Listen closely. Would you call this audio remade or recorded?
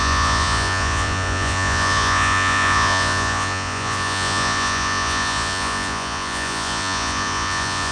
remade